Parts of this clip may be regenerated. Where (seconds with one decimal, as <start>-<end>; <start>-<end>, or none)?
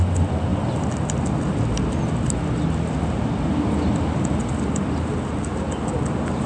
none